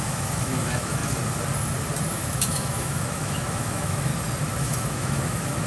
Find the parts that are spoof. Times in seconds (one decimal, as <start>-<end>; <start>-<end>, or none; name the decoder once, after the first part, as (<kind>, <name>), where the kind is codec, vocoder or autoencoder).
0.0-1.0 (autoencoder, DAC-VAE); 2.1-4.1; 4.6-5.7